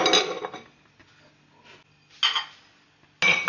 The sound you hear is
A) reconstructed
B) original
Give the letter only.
B